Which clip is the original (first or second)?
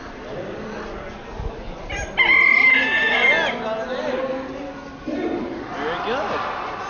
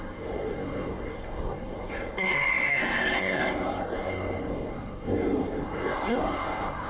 first